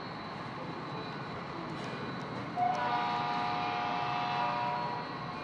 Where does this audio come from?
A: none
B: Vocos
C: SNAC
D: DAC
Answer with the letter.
A